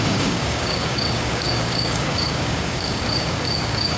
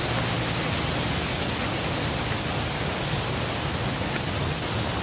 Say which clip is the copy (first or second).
first